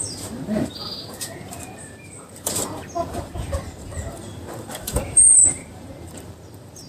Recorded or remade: remade